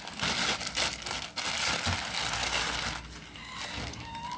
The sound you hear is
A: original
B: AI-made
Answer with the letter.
A